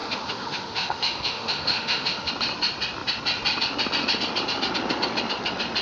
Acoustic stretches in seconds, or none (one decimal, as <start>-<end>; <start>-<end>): 2.3-5.8